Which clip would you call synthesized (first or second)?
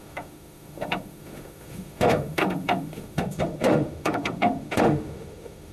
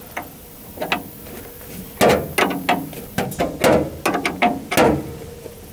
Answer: first